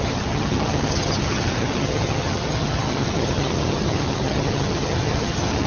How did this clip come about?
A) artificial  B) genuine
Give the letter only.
A